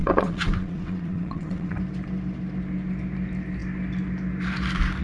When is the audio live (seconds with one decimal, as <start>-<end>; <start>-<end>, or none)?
1.8-5.0